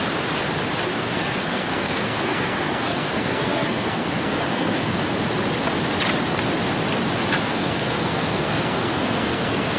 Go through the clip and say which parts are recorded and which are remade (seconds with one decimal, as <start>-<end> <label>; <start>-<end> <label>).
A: 0.0-0.9 recorded; 0.9-5.0 remade; 5.0-7.4 recorded; 7.4-9.8 remade